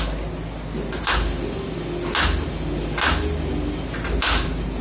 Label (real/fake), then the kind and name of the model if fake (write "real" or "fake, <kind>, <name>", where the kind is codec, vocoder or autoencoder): real